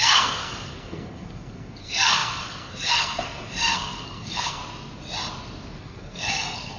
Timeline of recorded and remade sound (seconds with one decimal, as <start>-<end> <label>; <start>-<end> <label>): 0.0-4.6 remade; 4.6-5.8 recorded; 5.8-6.8 remade